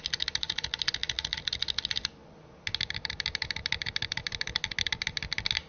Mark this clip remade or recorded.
recorded